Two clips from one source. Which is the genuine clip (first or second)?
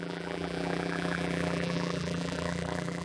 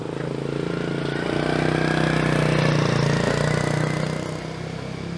second